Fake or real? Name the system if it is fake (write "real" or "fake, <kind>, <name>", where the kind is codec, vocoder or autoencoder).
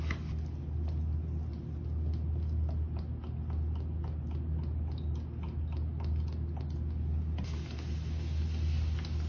real